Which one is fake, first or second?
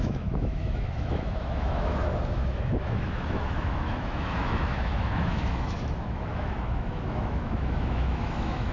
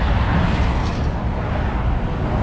first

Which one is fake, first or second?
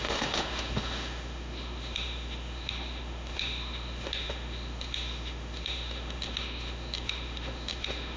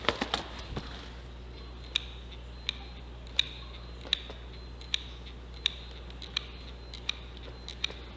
first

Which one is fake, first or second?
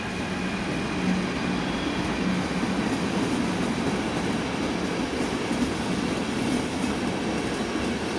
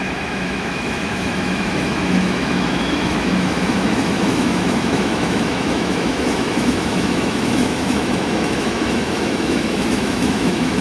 second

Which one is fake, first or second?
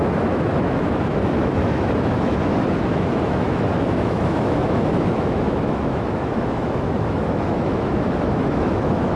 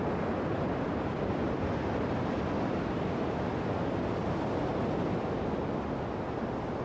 first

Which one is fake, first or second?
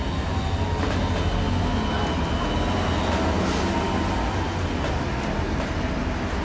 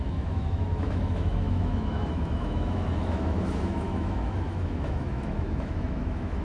second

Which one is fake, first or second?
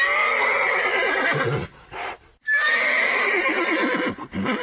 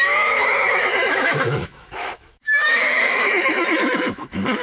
second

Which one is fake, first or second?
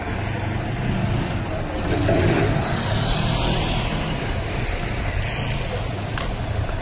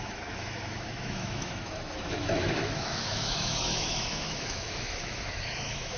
second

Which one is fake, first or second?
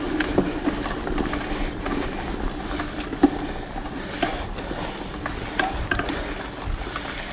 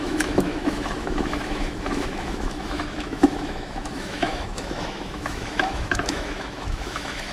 second